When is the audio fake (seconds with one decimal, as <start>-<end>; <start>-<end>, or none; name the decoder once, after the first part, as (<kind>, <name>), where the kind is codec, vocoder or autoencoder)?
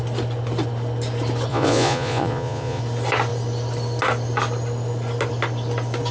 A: 1.5-2.8 (vocoder, Vocos)